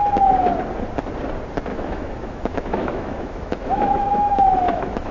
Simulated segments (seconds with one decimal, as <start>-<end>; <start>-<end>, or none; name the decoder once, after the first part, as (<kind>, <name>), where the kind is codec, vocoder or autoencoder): 1.7-5.1 (autoencoder, DAC-VAE)